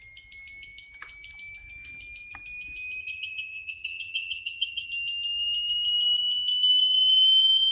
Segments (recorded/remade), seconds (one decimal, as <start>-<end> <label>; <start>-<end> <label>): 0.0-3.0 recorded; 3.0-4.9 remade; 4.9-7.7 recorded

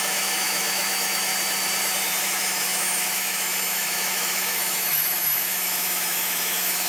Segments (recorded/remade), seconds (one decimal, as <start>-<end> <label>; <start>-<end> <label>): 0.0-1.3 remade; 1.3-2.2 recorded; 2.2-6.9 remade

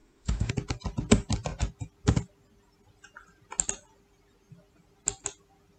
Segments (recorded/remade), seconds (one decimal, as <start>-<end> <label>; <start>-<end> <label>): 0.0-0.5 remade; 0.5-5.8 recorded

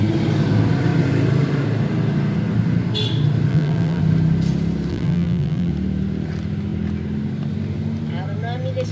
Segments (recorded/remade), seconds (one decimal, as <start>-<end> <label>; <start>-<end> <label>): 0.0-3.5 recorded; 3.5-4.0 remade; 4.0-4.9 recorded; 4.9-5.7 remade; 5.7-8.9 recorded

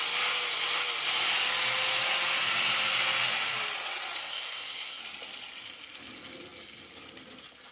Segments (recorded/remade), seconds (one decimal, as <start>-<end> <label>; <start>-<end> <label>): 0.0-4.2 recorded; 4.2-5.0 remade; 5.0-7.7 recorded

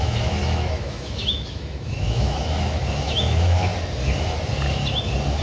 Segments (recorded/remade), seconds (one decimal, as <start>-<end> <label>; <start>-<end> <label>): 0.0-3.7 remade; 3.7-5.4 recorded

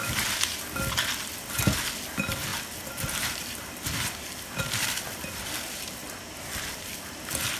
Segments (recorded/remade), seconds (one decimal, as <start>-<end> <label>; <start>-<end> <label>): 0.0-0.6 remade; 0.6-2.5 recorded; 2.5-7.1 remade; 7.1-7.6 recorded

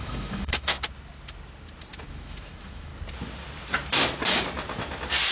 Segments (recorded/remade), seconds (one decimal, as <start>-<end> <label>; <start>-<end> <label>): 0.0-0.7 remade; 0.7-2.1 recorded; 2.1-2.9 remade; 2.9-5.3 recorded